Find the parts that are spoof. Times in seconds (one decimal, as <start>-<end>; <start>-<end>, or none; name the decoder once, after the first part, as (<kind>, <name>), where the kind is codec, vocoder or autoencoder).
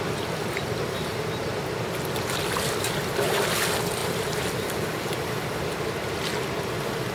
4.0-5.4 (vocoder, BigVGAN v2)